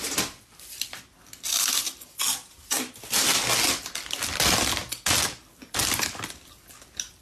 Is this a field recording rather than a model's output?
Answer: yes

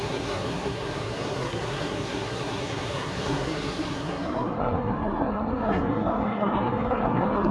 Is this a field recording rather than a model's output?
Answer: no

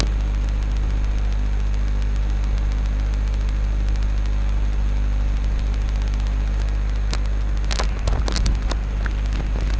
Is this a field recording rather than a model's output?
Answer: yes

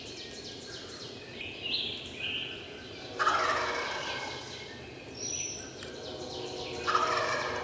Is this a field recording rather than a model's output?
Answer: yes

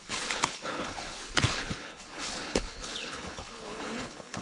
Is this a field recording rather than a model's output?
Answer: no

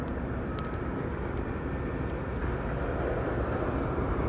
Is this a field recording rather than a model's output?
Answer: yes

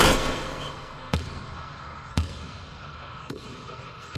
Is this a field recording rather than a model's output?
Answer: no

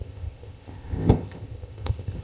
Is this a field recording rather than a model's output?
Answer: no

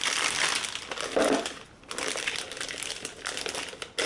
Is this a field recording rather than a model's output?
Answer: yes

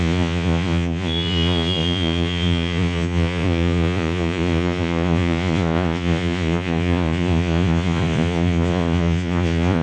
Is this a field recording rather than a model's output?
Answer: no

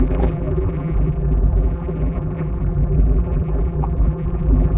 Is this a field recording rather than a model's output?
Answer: no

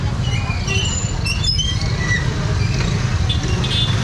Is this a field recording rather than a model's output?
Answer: yes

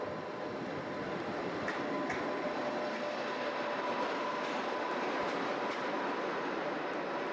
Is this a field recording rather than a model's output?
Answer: yes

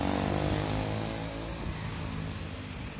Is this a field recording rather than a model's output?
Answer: yes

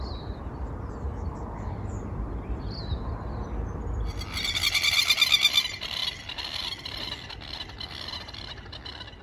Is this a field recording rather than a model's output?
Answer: yes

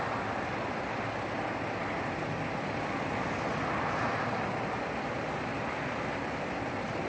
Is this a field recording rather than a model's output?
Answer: yes